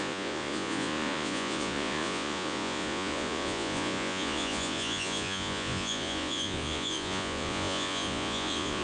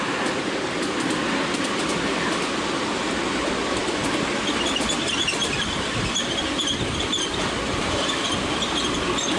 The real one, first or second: second